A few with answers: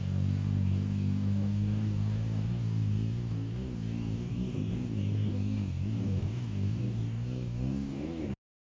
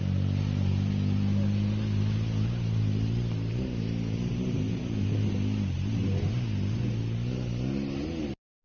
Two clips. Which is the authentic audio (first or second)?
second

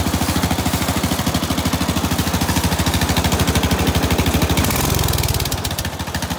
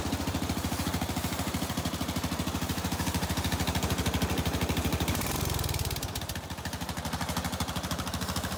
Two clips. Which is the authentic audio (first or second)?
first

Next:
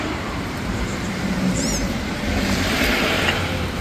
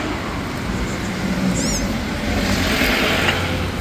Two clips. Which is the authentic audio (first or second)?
second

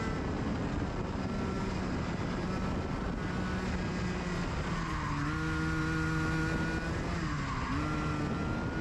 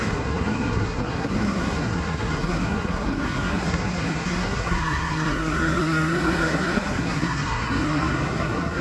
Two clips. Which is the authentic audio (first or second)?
first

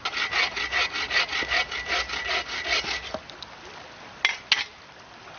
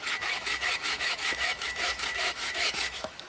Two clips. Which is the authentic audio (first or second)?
first